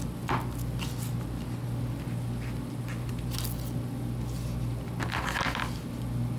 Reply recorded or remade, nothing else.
recorded